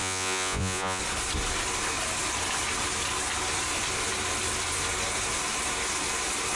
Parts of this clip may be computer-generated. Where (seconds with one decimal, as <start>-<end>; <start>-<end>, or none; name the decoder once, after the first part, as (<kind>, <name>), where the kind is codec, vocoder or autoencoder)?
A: 0.0-1.0 (vocoder, Vocos)